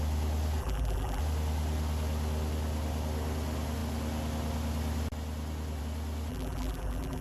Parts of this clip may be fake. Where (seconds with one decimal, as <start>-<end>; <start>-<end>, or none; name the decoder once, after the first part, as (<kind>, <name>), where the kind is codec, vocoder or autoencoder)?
0.6-1.2 (vocoder, BigVGAN v2); 6.3-7.2